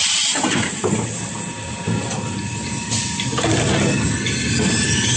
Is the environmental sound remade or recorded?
recorded